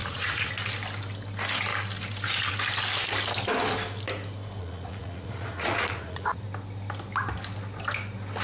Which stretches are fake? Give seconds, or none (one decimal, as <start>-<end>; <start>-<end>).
0.0-0.5; 4.6-6.4